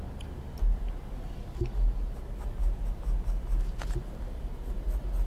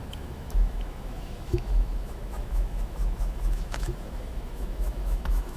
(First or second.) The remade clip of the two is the second